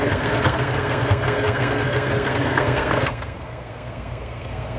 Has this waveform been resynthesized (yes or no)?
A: yes